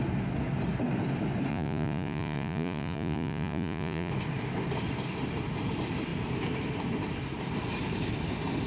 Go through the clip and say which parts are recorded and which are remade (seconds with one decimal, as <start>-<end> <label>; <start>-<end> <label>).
0.0-1.5 recorded; 1.5-4.1 remade; 4.1-8.7 recorded